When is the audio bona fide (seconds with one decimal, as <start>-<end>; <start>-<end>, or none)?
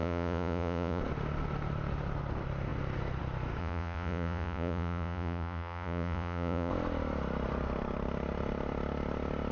1.0-3.6; 6.7-9.5